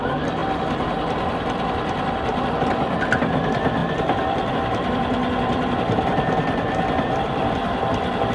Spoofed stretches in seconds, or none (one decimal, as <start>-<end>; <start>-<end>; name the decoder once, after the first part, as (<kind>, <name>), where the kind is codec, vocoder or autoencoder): 0.0-0.4 (vocoder, BigVGAN v2); 2.5-8.3